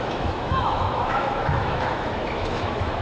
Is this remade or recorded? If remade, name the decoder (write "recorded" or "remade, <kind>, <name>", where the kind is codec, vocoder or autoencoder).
remade, autoencoder, DAC-VAE